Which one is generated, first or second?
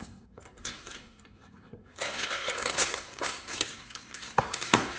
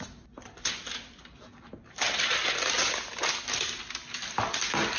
first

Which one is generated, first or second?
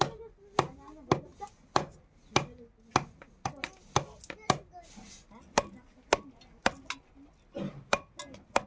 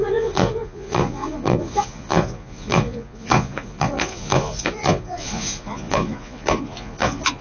second